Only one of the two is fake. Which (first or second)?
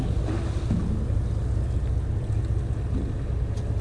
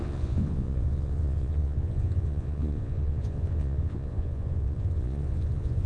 second